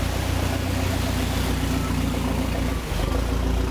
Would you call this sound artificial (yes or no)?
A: no